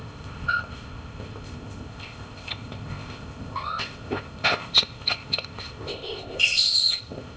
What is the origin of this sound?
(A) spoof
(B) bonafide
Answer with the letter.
A